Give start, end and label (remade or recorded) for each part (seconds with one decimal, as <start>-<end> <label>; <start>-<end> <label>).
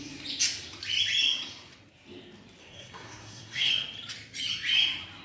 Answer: 0.0-2.6 recorded; 2.6-3.7 remade; 3.7-5.2 recorded